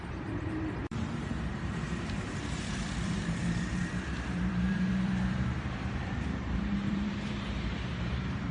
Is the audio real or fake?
fake